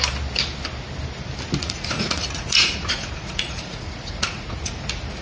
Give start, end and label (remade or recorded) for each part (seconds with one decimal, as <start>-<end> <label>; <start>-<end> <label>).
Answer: 0.0-1.6 recorded; 1.6-4.7 remade; 4.7-5.2 recorded